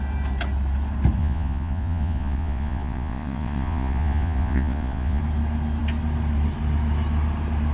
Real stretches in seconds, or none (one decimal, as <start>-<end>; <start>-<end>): 0.0-1.2; 5.2-7.7